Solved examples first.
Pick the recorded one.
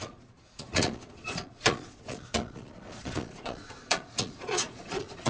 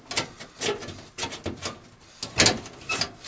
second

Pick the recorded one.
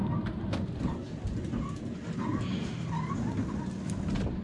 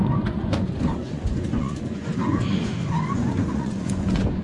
first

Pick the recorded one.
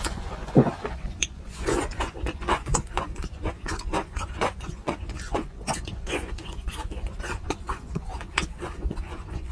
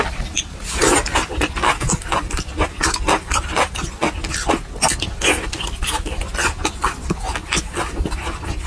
second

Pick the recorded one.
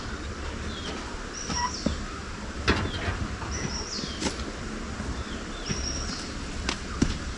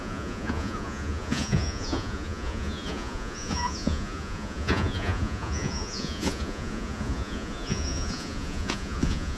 first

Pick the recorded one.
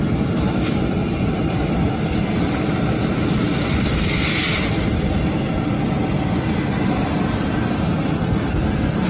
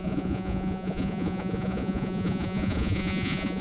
first